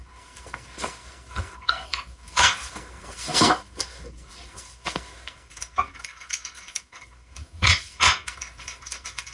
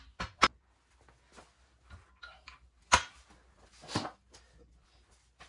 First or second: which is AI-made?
first